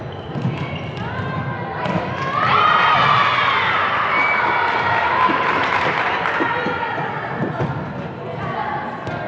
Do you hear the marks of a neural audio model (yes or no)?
no